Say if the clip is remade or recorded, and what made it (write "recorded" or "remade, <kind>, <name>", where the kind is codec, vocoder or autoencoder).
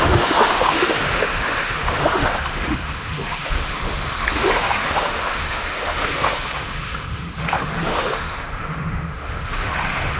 remade, autoencoder, DAC-VAE